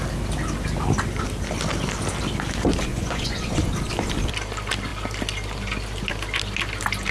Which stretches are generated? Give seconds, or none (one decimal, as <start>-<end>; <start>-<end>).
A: 2.9-3.7